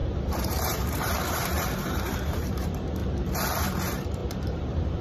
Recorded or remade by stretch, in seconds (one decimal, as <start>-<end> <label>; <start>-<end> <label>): 0.0-3.0 remade; 3.0-3.6 recorded; 3.6-5.0 remade